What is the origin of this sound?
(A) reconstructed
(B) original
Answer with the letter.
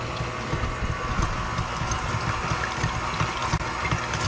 B